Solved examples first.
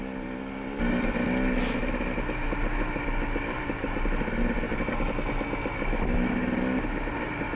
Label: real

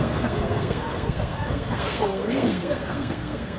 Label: fake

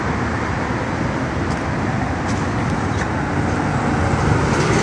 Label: real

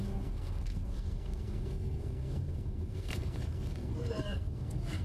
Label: fake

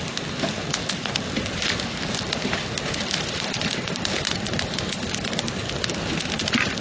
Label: real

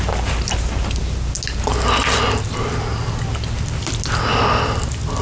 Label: real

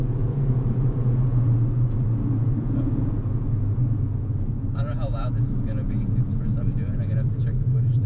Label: fake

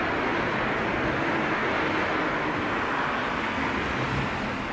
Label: real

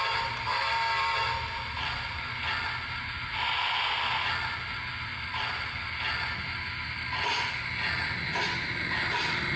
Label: real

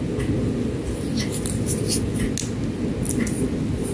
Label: real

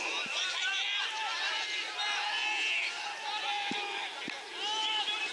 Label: real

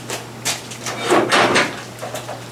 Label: real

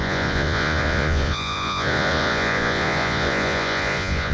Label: fake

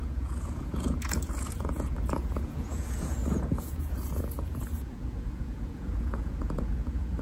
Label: fake